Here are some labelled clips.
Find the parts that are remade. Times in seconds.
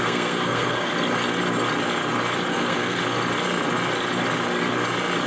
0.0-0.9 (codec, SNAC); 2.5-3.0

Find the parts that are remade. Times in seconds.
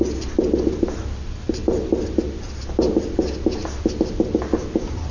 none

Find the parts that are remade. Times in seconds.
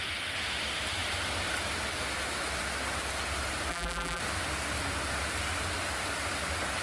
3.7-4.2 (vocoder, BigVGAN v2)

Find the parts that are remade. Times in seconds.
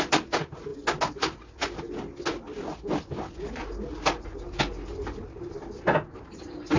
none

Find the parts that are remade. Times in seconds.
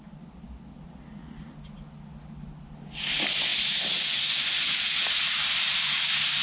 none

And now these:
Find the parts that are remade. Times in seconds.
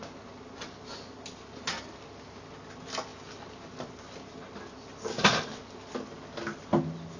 none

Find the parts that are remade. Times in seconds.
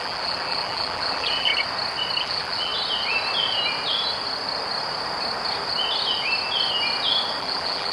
0.0-1.5 (vocoder, BigVGAN v2); 2.2-2.7; 7.4-7.9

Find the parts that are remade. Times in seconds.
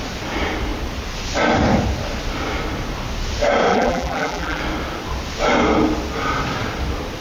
3.7-4.6 (vocoder, BigVGAN v2)